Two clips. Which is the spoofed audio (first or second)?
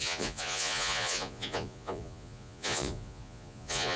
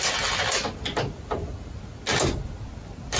first